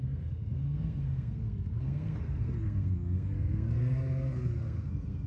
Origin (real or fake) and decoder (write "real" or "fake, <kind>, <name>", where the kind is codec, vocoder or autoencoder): fake, codec, SNAC